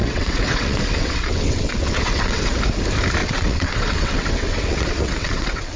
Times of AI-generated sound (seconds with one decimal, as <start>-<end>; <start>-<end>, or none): 0.0-2.6; 3.2-5.8